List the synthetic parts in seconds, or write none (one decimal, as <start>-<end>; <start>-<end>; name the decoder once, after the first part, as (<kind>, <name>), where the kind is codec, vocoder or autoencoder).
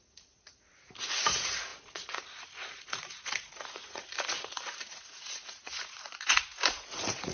0.0-7.3 (vocoder, Vocos)